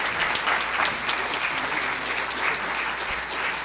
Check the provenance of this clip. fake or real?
real